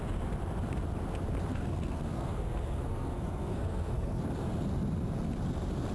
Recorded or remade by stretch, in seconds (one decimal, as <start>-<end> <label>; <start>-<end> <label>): 0.0-1.5 recorded; 1.5-4.2 remade; 4.2-5.9 recorded